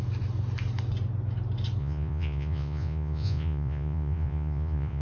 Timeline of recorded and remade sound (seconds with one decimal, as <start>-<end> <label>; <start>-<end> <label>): 0.0-1.8 recorded; 1.8-5.0 remade